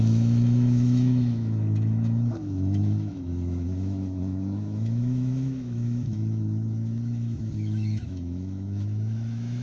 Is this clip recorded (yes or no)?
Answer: no